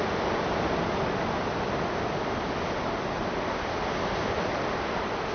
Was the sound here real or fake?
real